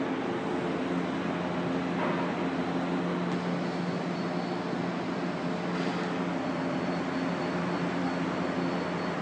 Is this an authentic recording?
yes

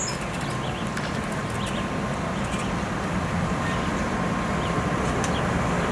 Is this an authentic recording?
yes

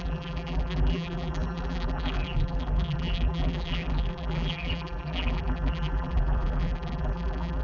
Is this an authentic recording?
no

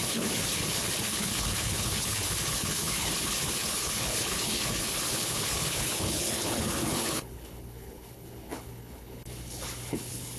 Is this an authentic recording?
no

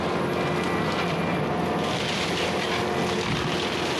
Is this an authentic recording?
yes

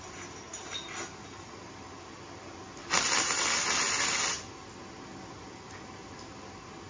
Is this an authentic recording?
yes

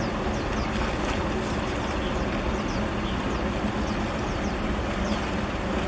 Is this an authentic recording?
yes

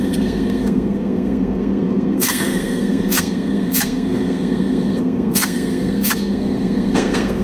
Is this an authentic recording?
no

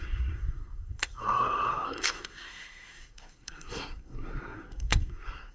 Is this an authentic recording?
no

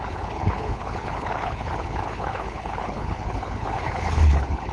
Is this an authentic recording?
no